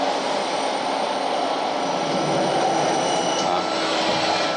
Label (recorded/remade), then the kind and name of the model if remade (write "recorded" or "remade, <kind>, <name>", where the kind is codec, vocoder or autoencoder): recorded